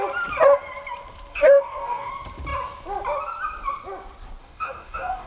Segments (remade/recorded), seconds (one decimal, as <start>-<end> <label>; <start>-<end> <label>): 0.0-1.3 recorded; 1.3-2.1 remade; 2.1-4.4 recorded; 4.4-5.3 remade